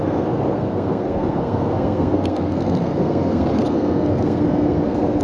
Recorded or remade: remade